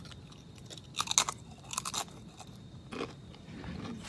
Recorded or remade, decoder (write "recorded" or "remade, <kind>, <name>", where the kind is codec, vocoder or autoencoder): recorded